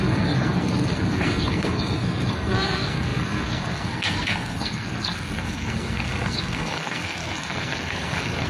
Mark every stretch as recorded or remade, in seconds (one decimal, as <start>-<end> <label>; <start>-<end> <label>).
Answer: 0.0-8.5 remade